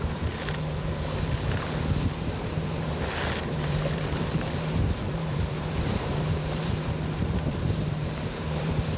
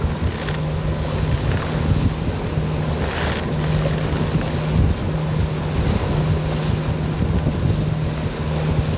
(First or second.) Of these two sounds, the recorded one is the second